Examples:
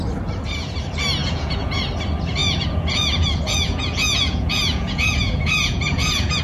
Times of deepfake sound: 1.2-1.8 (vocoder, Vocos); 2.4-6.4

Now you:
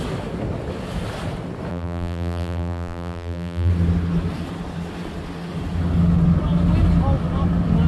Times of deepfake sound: 1.7-3.7 (vocoder, BigVGAN v2)

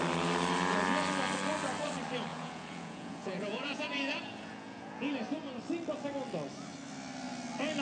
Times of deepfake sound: 2.3-5.1 (vocoder, Vocos)

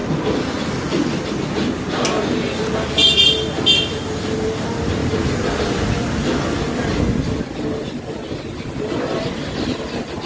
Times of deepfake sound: none

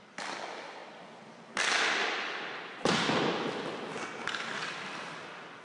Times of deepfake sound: 0.0-0.8 (vocoder, BigVGAN v2); 4.2-5.6

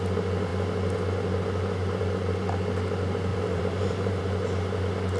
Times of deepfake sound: 3.3-4.2 (vocoder, BigVGAN v2)

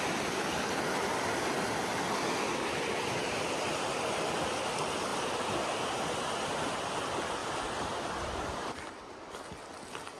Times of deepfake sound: 5.1-6.6 (vocoder, BigVGAN v2); 7.4-8.9